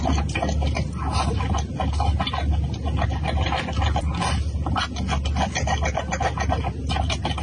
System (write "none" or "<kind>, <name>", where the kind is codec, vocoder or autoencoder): none